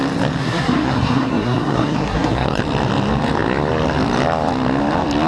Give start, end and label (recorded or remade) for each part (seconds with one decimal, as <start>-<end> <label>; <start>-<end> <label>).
0.0-0.4 recorded; 0.4-2.6 remade; 2.6-5.3 recorded